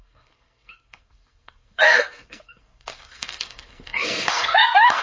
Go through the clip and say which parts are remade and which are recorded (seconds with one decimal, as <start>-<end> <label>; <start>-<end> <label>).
0.0-5.0 remade